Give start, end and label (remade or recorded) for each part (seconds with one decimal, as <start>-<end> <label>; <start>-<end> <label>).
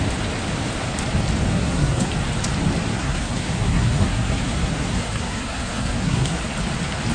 0.0-1.5 recorded; 1.5-2.1 remade; 2.1-2.9 recorded; 2.9-6.4 remade; 6.4-7.1 recorded